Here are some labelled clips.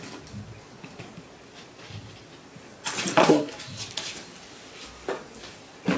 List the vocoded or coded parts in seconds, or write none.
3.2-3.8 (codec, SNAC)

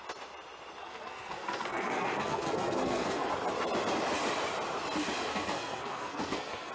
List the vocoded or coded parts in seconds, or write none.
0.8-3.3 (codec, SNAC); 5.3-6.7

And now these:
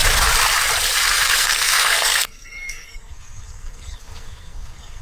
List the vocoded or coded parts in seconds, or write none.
1.1-5.0 (codec, SNAC)